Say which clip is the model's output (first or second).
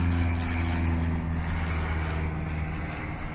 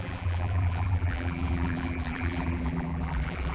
second